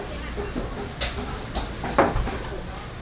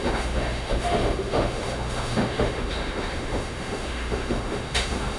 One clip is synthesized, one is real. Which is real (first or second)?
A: first